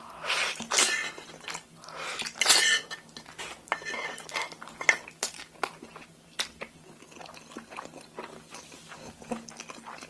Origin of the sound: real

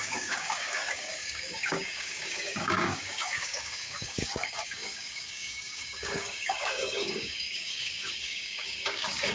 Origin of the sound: fake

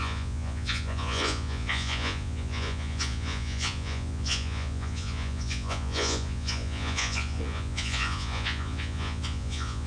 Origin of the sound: fake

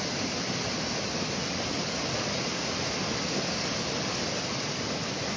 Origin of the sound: real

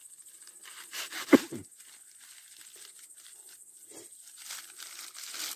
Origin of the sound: real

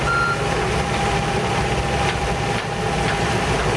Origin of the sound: real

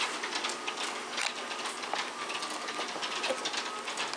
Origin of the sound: real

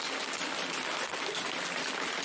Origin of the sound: real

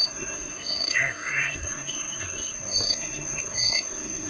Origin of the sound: fake